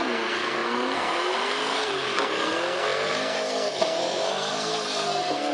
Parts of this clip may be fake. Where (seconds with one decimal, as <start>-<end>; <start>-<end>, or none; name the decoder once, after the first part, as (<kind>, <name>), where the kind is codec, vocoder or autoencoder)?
0.0-5.5 (codec, SNAC)